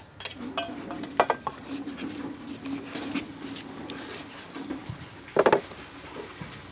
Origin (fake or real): real